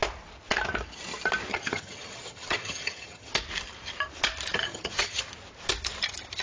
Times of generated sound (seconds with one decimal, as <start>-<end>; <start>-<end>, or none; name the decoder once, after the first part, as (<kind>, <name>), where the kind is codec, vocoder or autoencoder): 1.5-3.3 (vocoder, HiFi-GAN); 4.6-5.2